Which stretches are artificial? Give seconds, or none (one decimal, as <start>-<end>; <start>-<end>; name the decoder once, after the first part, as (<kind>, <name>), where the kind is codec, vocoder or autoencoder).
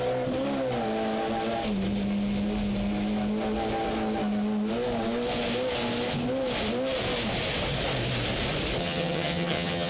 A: 8.8-9.9 (vocoder, HiFi-GAN)